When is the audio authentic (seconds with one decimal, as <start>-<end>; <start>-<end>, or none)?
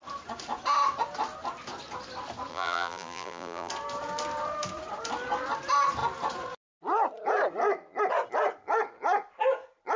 0.0-2.5; 3.7-10.0